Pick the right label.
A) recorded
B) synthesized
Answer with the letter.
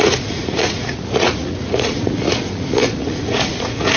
B